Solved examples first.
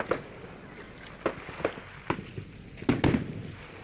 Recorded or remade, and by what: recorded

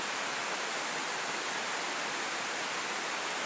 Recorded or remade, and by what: recorded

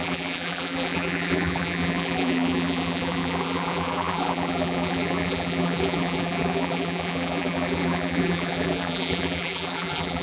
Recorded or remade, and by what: remade, vocoder, BigVGAN v2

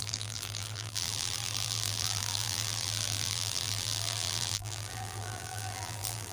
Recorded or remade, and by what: remade, vocoder, BigVGAN v2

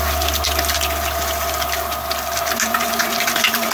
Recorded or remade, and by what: recorded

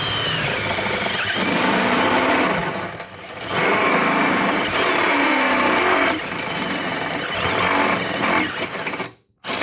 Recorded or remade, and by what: recorded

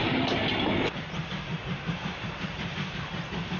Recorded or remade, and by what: remade, vocoder, BigVGAN v2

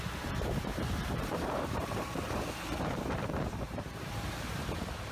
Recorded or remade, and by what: remade, vocoder, BigVGAN v2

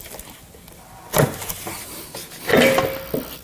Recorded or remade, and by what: recorded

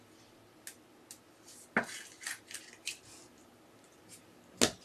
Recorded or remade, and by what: recorded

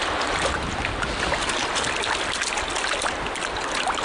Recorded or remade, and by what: recorded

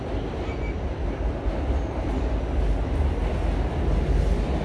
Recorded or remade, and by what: recorded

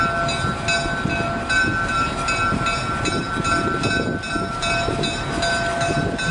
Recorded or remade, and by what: recorded